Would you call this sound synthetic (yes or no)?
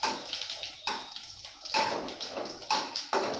yes